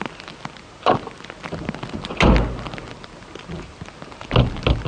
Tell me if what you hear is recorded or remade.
recorded